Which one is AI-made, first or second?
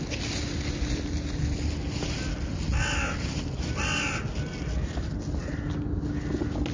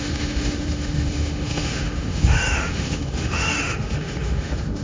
second